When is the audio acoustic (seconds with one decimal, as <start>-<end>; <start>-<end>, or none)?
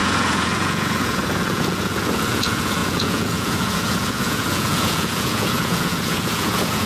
none